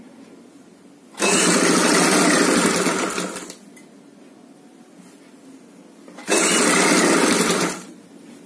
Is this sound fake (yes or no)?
no